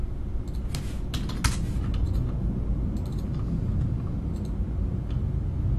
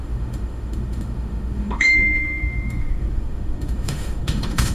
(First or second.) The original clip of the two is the first